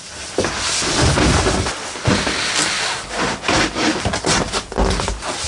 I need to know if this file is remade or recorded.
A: recorded